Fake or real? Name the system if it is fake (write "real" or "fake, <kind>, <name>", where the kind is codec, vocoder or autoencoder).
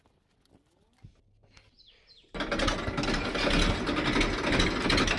real